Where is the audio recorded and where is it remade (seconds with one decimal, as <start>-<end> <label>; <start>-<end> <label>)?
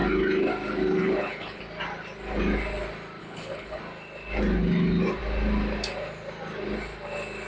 0.0-1.0 recorded; 1.0-1.6 remade; 1.6-3.2 recorded; 3.2-3.8 remade; 3.8-7.5 recorded